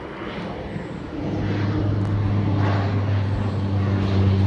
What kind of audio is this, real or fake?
real